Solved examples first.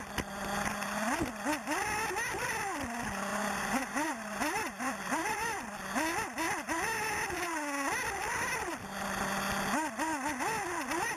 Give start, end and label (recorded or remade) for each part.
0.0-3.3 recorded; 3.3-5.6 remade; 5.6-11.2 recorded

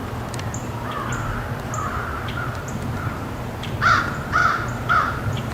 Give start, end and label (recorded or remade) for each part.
0.0-0.7 remade; 0.7-1.9 recorded; 1.9-3.7 remade; 3.7-5.5 recorded